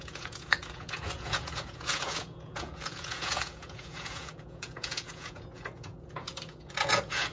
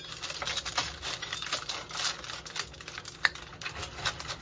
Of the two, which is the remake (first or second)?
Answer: first